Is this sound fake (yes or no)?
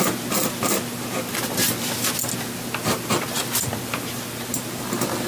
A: no